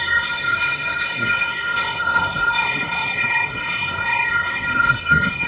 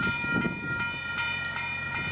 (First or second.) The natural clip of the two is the second